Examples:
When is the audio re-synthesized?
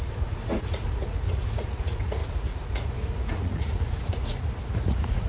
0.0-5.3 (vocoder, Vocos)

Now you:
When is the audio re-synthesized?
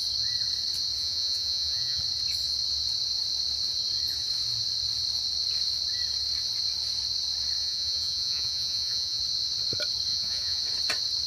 1.0-2.0 (vocoder, Vocos); 7.6-9.2; 10.1-10.6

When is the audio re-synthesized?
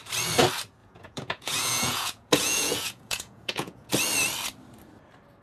0.8-3.9 (vocoder, Vocos)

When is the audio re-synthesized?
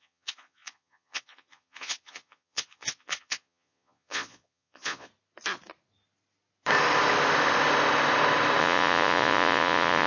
0.0-5.1 (vocoder, Vocos); 8.6-10.1